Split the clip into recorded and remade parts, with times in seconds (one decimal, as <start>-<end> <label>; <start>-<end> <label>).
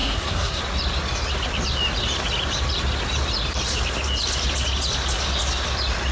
0.0-0.6 remade; 0.6-6.1 recorded